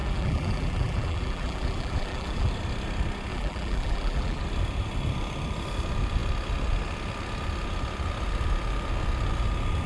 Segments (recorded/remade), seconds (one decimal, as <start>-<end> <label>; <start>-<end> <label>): 0.0-2.5 remade; 2.5-3.3 recorded; 3.3-4.4 remade; 4.4-9.9 recorded